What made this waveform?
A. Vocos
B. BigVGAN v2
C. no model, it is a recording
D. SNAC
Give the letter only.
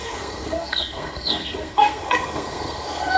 D